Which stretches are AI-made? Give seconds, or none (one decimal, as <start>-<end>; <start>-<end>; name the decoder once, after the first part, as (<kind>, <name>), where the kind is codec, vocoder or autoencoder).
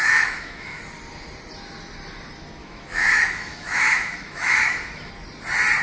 0.0-0.8 (autoencoder, DAC-VAE); 2.6-5.1